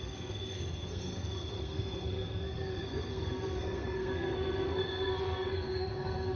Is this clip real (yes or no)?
no